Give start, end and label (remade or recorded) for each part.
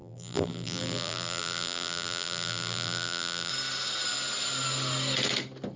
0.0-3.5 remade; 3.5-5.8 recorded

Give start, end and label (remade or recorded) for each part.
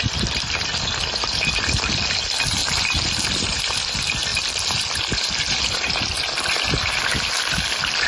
0.0-8.1 recorded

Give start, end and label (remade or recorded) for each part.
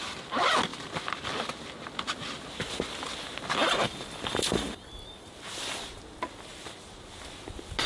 0.0-3.6 recorded; 3.6-5.3 remade; 5.3-7.9 recorded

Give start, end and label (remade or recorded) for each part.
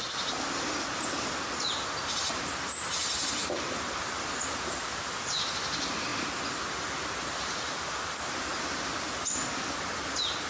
0.0-3.0 recorded; 3.0-4.3 remade; 4.3-10.5 recorded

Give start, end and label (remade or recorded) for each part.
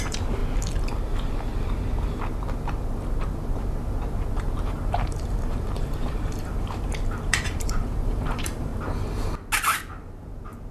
0.0-0.4 remade; 0.4-4.3 recorded; 4.3-8.7 remade; 8.7-10.7 recorded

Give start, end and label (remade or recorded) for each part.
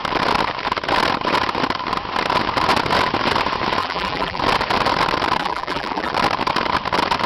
0.0-3.8 recorded; 3.8-4.4 remade; 4.4-5.4 recorded; 5.4-6.1 remade; 6.1-7.3 recorded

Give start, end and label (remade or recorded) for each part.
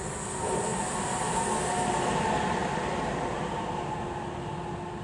0.0-5.0 recorded